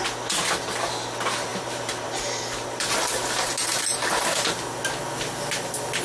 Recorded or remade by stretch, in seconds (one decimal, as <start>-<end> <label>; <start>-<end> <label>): 0.0-1.5 recorded; 1.5-4.7 remade; 4.7-6.0 recorded